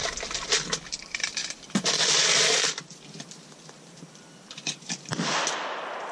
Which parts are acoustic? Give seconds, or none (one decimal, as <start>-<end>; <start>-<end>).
0.0-1.4; 5.1-6.1